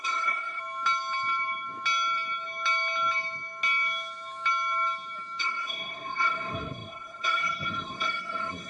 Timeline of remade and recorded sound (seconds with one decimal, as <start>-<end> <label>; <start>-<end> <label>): 0.0-0.6 remade; 0.6-5.4 recorded; 5.4-8.7 remade